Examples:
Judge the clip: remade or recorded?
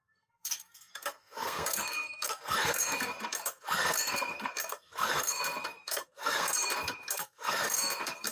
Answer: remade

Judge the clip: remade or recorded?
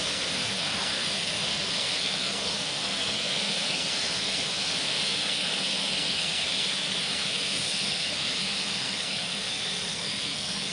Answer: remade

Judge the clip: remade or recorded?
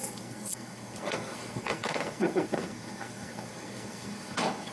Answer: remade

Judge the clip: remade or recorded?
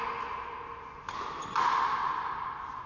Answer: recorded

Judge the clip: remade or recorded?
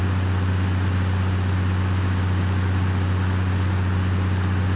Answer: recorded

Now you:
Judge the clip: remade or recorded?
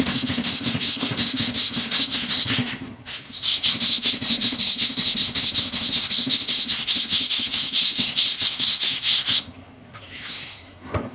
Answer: remade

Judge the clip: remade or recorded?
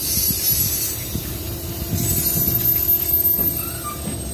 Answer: recorded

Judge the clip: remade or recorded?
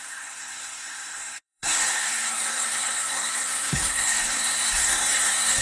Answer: remade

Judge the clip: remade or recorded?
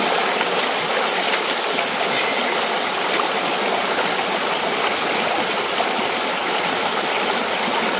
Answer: recorded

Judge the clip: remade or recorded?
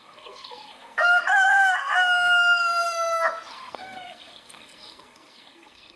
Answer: remade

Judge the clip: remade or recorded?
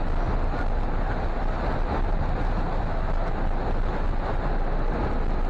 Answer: recorded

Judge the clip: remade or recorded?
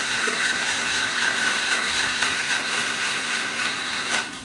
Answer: remade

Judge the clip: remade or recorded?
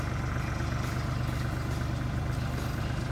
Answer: recorded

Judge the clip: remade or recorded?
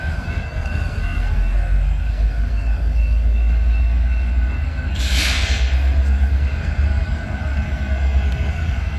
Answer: remade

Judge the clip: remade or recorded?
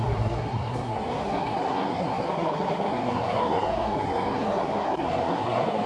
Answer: remade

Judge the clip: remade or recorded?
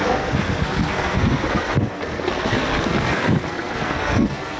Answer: remade